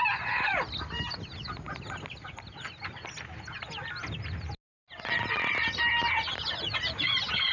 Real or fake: real